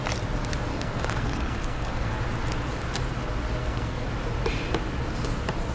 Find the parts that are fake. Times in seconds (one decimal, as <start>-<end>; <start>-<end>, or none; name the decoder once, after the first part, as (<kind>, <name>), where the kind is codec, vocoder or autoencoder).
0.7-2.2 (codec, SNAC); 3.6-4.1